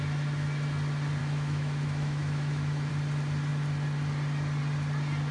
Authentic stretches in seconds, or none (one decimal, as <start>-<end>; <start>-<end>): 0.0-1.2; 2.9-5.3